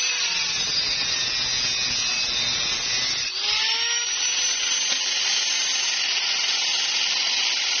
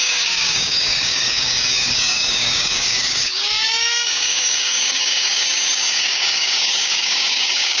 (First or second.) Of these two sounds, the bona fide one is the first